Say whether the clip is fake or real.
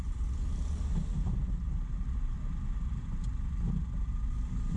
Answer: real